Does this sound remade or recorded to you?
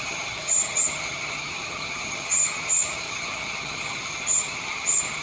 remade